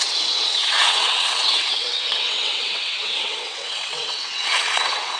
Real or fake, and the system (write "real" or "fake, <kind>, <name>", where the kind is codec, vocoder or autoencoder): fake, vocoder, WaveNeXt